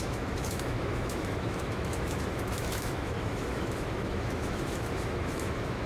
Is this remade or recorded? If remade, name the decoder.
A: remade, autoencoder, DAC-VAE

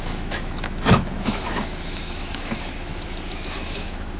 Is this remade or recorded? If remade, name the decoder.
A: remade, autoencoder, DAC-VAE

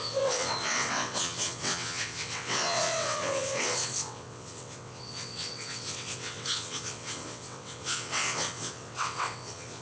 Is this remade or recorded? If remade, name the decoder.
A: remade, vocoder, WaveNeXt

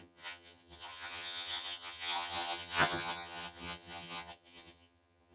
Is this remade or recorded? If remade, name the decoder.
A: remade, vocoder, HiFi-GAN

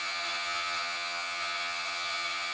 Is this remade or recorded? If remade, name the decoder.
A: remade, vocoder, HiFi-GAN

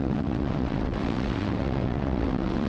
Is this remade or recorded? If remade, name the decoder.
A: remade, vocoder, WaveNeXt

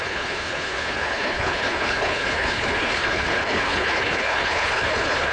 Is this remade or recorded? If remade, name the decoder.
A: remade, codec, HILCodec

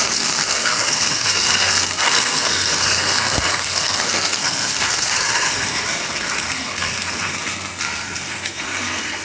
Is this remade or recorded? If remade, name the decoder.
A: remade, codec, SNAC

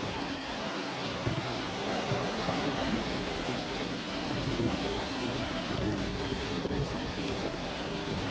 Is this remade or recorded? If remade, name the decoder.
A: remade, codec, SNAC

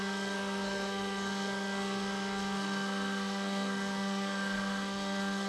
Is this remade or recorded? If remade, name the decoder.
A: remade, codec, SNAC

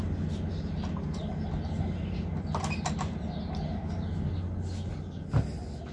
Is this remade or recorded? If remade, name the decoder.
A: recorded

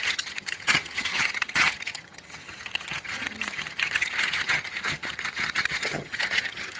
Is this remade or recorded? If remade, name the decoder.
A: remade, vocoder, HiFi-GAN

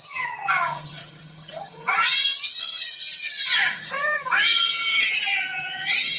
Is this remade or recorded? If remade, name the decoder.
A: remade, vocoder, HiFi-GAN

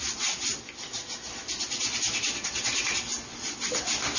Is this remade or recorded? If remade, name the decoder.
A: recorded